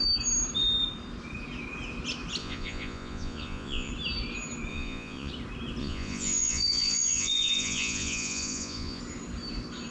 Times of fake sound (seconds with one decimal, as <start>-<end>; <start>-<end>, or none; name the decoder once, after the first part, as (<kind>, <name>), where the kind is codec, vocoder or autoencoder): 2.4-3.9 (vocoder, Vocos); 4.7-5.3; 5.8-9.0